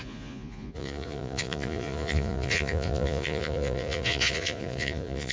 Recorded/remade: remade